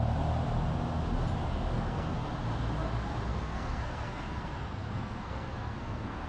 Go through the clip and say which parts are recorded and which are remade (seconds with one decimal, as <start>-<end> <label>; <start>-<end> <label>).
0.0-1.7 recorded; 1.7-2.3 remade; 2.3-3.3 recorded; 3.3-6.3 remade